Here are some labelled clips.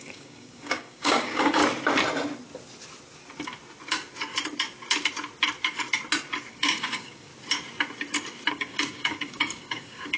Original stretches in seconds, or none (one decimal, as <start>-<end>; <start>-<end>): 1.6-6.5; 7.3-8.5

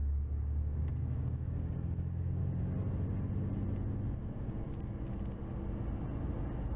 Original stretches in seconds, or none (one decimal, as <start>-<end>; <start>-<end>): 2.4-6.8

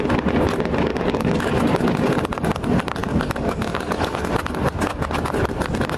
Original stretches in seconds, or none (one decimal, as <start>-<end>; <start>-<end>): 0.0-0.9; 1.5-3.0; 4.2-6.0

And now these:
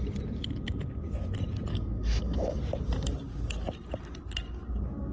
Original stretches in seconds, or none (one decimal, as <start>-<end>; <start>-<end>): 0.0-1.7; 2.6-5.1

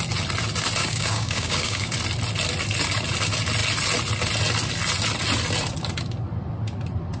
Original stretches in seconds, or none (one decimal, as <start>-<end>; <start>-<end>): 0.0-0.8; 1.9-7.2

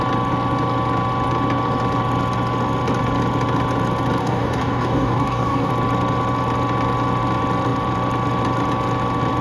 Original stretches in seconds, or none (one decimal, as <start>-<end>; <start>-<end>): 0.0-4.2; 5.7-9.4

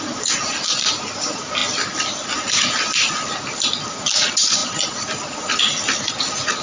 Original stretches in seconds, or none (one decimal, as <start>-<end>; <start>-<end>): 0.0-6.6